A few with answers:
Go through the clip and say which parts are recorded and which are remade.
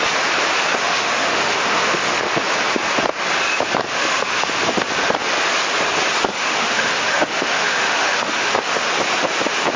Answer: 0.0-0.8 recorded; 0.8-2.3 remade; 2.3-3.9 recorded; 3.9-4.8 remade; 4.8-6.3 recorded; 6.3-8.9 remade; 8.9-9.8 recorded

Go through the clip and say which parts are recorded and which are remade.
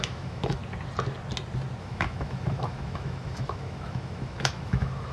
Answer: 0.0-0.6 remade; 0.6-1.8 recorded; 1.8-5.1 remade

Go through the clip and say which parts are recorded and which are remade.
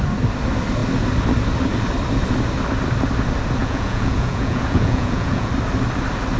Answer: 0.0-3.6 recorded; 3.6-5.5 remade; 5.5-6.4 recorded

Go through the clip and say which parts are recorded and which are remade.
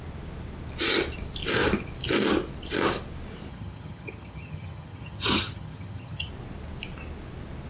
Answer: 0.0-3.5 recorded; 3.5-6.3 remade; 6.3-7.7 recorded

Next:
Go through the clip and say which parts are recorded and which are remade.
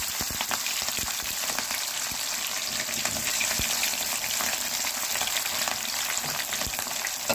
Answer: 0.0-7.3 recorded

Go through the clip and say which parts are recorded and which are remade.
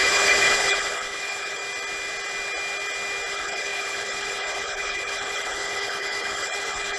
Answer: 0.0-1.6 remade; 1.6-3.3 recorded; 3.3-7.0 remade